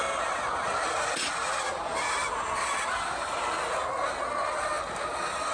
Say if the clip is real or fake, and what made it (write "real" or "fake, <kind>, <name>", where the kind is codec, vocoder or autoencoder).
real